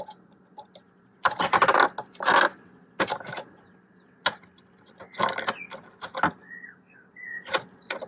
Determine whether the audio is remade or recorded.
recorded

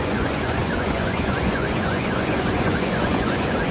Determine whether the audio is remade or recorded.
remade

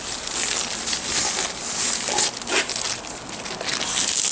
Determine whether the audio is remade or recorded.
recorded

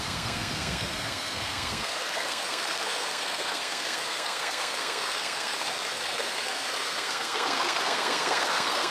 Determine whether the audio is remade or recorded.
remade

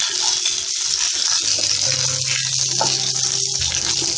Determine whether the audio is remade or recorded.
recorded